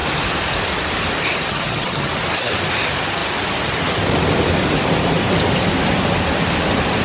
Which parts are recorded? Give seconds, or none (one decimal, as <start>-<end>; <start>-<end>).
0.0-1.5; 2.1-7.0